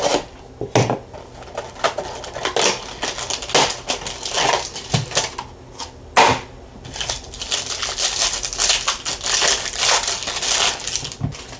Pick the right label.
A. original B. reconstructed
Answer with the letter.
A